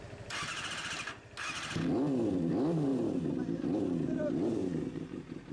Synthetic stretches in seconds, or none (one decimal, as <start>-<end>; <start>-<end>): 2.9-5.5